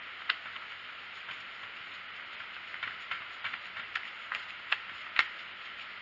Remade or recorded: recorded